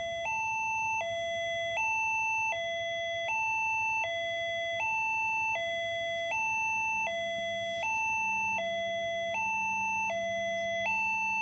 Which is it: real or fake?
real